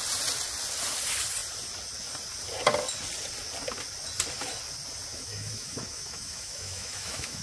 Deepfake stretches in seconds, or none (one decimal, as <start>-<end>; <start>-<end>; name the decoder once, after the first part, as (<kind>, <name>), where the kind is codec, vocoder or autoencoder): 5.1-7.4 (autoencoder, DAC-VAE)